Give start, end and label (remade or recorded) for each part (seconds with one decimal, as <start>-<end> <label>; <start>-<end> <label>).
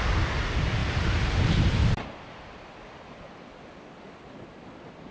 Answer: 0.0-0.8 recorded; 0.8-3.5 remade; 3.5-5.1 recorded